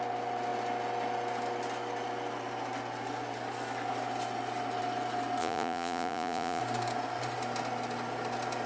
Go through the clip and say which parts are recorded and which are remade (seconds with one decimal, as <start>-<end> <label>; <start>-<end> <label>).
0.0-5.4 recorded; 5.4-6.6 remade; 6.6-8.7 recorded